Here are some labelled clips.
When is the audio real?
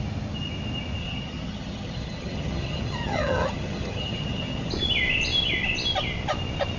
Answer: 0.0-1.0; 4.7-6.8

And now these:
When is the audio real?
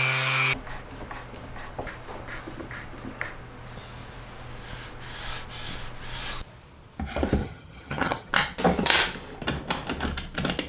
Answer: 0.0-7.4; 8.3-10.7